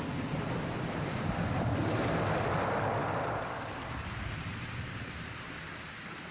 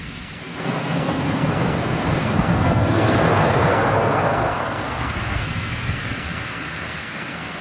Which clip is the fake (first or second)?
second